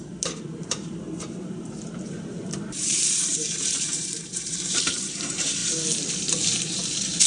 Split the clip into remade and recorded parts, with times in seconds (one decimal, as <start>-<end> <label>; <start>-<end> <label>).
0.0-5.6 remade; 5.6-6.1 recorded; 6.1-7.3 remade